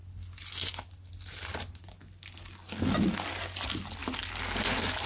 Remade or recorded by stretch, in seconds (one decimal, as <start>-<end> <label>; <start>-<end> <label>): 0.0-5.1 recorded